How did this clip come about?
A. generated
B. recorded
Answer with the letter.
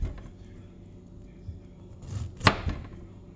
B